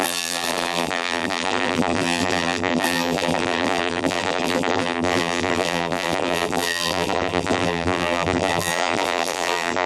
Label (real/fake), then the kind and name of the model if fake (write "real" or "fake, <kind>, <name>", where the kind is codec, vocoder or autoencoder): fake, vocoder, BigVGAN v2